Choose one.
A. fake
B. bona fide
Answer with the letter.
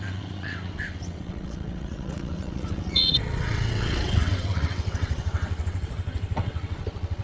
A